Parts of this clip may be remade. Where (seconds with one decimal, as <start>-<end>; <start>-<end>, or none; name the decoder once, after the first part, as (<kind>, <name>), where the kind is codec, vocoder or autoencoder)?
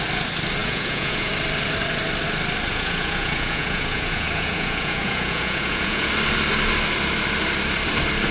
0.6-1.3 (vocoder, Vocos); 2.7-6.1